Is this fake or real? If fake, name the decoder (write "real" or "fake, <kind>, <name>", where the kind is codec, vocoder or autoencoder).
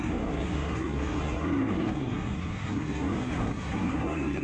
fake, codec, SNAC